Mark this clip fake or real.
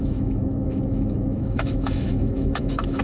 fake